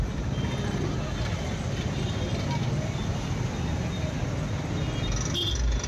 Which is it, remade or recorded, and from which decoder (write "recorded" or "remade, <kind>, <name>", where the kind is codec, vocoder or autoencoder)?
recorded